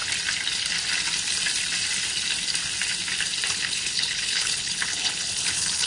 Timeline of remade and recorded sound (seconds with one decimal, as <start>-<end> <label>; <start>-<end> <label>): 0.0-3.5 recorded; 3.5-5.9 remade